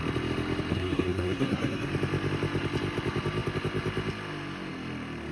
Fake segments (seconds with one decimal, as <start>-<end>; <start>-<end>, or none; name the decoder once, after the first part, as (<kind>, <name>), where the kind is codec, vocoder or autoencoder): 0.7-1.9 (codec, SNAC)